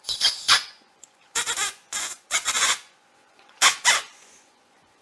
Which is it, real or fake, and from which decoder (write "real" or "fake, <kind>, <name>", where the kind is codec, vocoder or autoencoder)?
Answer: fake, vocoder, Vocos